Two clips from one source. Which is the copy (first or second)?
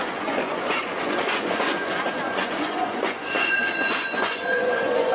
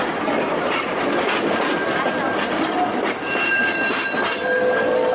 first